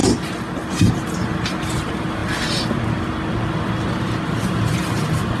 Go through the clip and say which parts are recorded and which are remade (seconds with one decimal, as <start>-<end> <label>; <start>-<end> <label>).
0.0-5.4 recorded